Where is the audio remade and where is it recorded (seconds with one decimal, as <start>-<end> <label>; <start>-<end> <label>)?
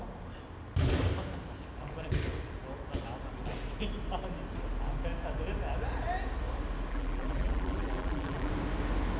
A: 0.0-6.9 recorded; 6.9-8.5 remade; 8.5-9.2 recorded